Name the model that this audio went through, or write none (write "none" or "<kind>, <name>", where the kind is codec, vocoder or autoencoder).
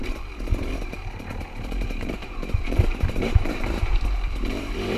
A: vocoder, BigVGAN v2